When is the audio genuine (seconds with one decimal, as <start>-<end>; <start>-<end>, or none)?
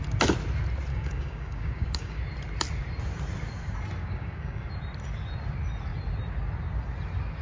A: 0.0-0.9; 2.2-4.0; 4.7-7.4